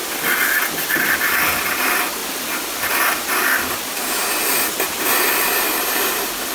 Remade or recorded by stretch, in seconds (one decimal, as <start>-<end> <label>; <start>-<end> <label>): 0.0-6.5 recorded